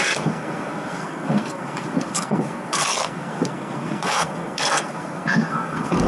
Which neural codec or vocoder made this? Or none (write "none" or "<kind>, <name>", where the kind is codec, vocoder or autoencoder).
codec, SNAC